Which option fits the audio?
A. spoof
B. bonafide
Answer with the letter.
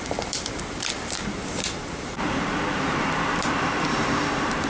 A